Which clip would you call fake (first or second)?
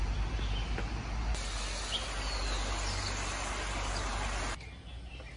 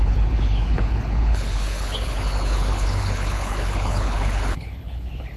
second